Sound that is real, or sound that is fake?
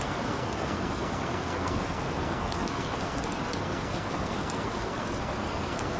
fake